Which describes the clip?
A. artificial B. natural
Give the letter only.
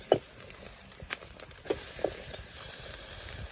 B